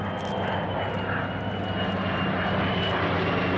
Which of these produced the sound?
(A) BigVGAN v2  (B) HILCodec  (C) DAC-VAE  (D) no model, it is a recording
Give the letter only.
D